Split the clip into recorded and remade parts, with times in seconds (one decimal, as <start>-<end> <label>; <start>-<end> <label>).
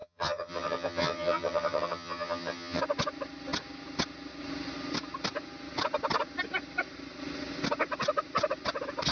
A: 0.0-2.8 remade; 2.8-9.1 recorded